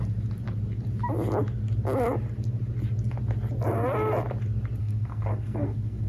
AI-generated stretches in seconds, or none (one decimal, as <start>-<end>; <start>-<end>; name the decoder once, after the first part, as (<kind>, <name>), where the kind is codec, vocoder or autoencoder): 4.8-6.1 (codec, SNAC)